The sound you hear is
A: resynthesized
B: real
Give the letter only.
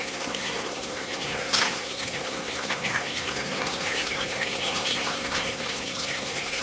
A